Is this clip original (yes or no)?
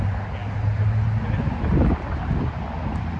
yes